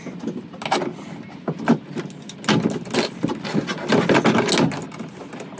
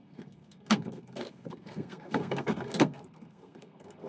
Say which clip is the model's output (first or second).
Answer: second